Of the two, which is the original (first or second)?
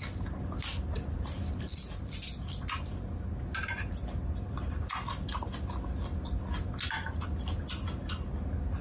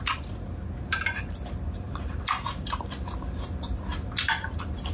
first